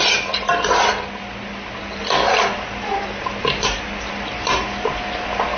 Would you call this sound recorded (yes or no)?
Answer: yes